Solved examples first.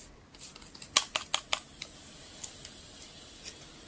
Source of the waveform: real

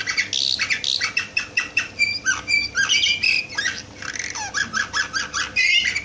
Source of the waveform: real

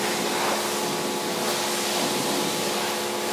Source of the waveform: real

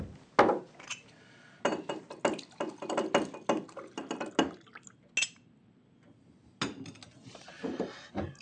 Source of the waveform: real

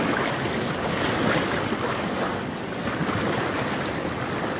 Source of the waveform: real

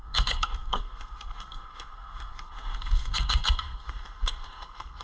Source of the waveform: fake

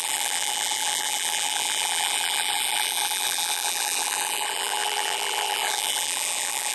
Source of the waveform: fake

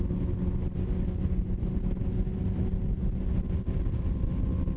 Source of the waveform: real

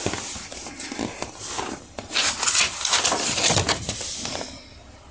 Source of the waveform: real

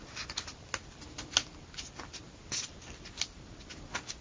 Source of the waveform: real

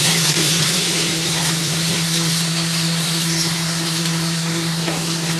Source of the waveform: fake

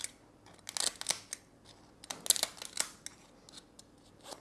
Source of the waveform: real